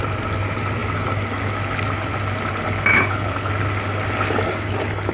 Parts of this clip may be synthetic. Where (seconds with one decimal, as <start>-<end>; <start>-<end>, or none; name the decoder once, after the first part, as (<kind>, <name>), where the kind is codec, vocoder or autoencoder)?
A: 2.9-3.5 (codec, HILCodec)